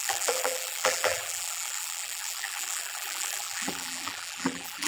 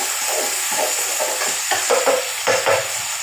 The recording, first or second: second